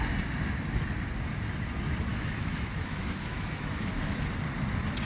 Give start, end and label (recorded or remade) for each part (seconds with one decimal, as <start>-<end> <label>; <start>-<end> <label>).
0.0-2.1 recorded; 2.1-3.9 remade; 3.9-5.0 recorded